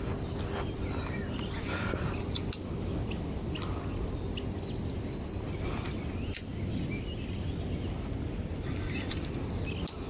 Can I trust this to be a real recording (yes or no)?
yes